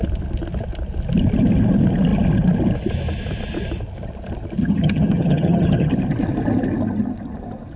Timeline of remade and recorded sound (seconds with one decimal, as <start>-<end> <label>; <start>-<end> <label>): 0.0-4.6 recorded; 4.6-5.9 remade; 5.9-7.8 recorded